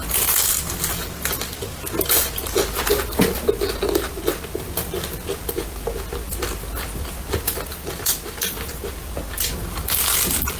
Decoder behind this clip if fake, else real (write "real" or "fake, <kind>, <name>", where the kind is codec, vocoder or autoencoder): real